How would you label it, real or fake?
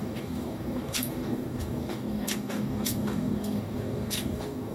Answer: fake